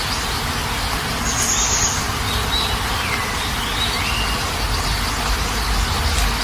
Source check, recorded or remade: recorded